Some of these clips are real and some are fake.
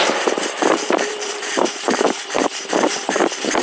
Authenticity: fake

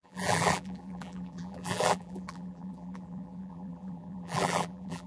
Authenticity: fake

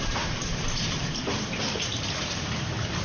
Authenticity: fake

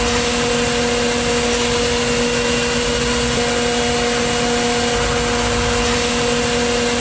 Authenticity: real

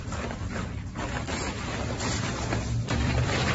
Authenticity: fake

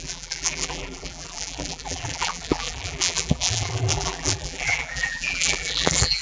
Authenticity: fake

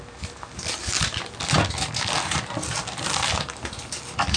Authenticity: real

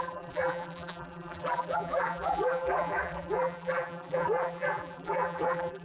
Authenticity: fake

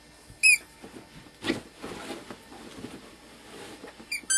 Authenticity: real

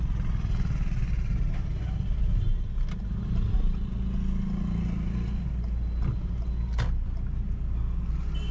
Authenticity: real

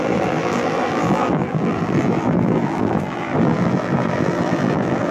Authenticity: fake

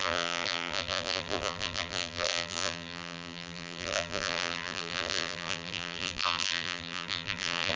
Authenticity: fake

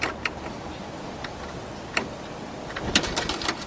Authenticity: fake